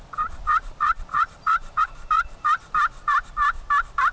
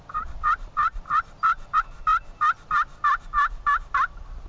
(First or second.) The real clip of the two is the second